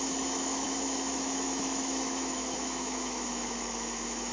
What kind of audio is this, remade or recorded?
remade